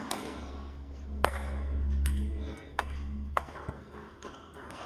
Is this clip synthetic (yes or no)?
yes